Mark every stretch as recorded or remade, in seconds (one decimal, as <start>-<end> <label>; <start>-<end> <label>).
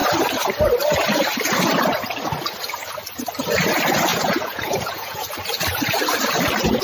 0.0-4.1 recorded; 4.1-5.3 remade; 5.3-6.8 recorded